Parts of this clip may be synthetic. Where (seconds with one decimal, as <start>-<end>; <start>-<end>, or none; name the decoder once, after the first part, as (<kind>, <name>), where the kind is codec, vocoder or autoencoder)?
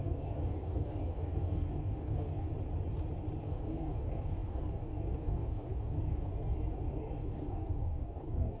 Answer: 0.0-2.5 (codec, DAC); 3.4-8.6